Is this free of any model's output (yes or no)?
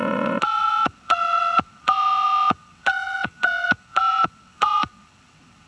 no